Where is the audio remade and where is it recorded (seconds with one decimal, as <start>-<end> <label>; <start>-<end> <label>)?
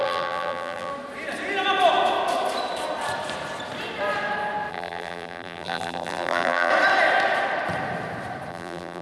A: 0.0-0.9 remade; 0.9-4.7 recorded; 4.7-6.7 remade; 6.7-8.5 recorded; 8.5-9.0 remade